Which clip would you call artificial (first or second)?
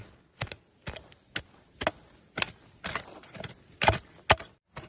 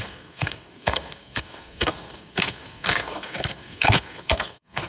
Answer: second